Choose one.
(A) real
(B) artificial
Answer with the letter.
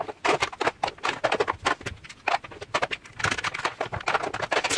A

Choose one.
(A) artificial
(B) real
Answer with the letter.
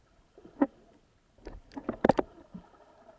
B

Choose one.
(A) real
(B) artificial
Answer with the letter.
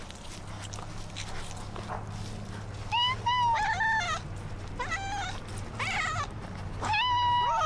A